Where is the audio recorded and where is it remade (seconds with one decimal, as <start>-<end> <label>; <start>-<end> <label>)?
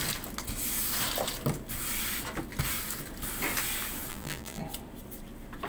0.0-4.1 recorded; 4.1-4.6 remade; 4.6-5.7 recorded